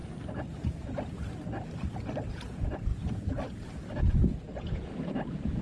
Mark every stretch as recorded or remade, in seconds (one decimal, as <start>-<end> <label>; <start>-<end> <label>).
0.0-2.3 recorded; 2.3-2.9 remade; 2.9-4.0 recorded; 4.0-5.6 remade